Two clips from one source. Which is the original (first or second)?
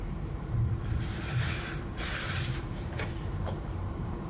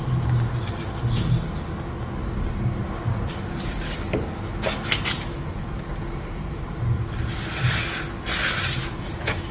second